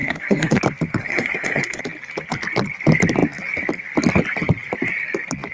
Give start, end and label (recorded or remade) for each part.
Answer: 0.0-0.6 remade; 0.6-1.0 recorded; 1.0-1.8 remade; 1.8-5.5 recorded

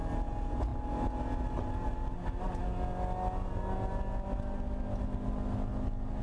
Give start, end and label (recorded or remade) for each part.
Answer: 0.0-6.2 recorded

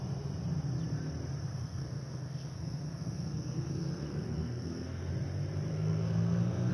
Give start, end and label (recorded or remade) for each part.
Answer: 0.0-1.5 recorded; 1.5-5.1 remade; 5.1-5.7 recorded; 5.7-6.7 remade

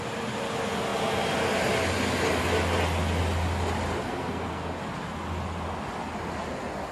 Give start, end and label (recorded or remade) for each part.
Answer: 0.0-4.0 recorded; 4.0-4.8 remade; 4.8-6.9 recorded

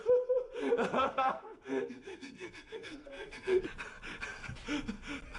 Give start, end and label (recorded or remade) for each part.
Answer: 0.0-1.0 recorded; 1.0-3.6 remade; 3.6-5.4 recorded

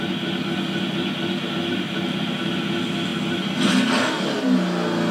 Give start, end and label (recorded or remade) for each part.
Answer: 0.0-5.1 recorded